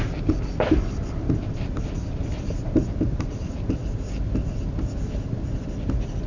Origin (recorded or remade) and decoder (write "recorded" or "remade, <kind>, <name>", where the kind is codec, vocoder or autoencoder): recorded